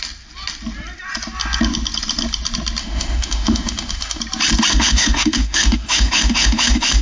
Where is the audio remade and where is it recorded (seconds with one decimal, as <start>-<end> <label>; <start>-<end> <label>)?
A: 0.0-2.8 recorded; 2.8-4.2 remade; 4.2-4.7 recorded; 4.7-7.0 remade